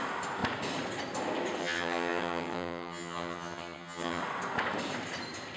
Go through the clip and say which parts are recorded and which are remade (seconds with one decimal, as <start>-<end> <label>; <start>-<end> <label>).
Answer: 0.0-1.6 recorded; 1.6-4.2 remade; 4.2-5.6 recorded